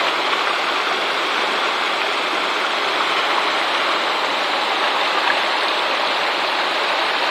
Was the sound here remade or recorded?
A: remade